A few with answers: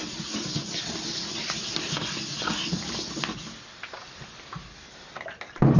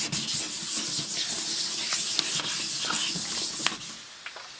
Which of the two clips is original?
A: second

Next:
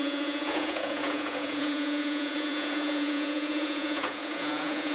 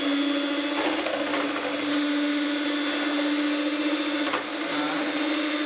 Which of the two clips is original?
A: second